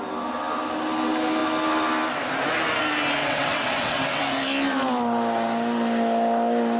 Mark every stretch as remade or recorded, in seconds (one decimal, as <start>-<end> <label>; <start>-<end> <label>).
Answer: 0.0-3.2 recorded; 3.2-4.2 remade; 4.2-6.8 recorded